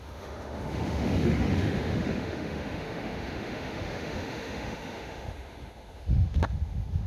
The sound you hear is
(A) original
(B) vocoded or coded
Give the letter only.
B